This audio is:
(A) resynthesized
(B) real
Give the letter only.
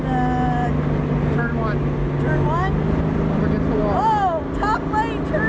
B